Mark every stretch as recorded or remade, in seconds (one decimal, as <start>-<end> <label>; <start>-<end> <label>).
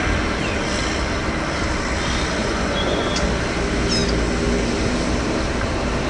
0.0-2.4 recorded; 2.4-3.1 remade; 3.1-6.1 recorded